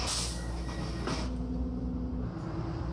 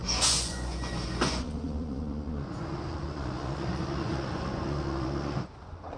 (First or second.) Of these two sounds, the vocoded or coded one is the second